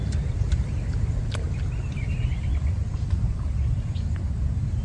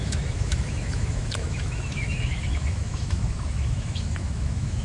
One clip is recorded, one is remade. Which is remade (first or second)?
second